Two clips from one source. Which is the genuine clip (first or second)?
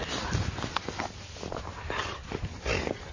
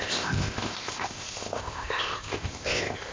first